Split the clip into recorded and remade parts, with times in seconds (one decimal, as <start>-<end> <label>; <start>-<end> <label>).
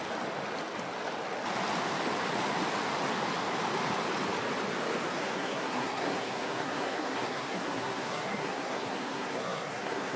0.0-5.1 recorded; 5.1-10.2 remade